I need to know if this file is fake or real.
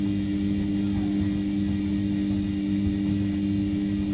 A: real